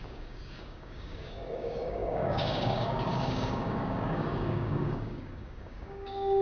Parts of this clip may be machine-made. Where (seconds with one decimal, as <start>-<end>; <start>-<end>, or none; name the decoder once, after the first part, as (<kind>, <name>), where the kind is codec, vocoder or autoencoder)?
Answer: 0.0-6.4 (codec, DAC)